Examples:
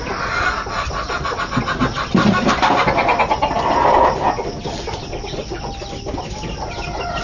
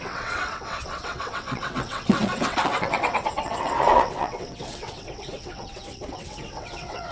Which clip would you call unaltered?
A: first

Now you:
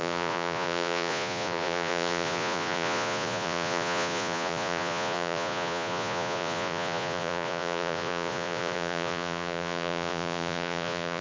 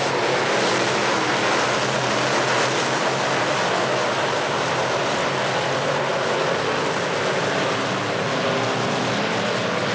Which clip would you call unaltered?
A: second